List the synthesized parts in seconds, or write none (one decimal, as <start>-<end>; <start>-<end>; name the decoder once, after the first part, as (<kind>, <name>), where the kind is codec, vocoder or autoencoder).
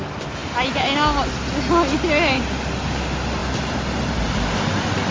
none